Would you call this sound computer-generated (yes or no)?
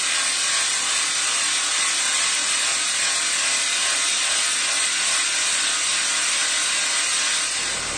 no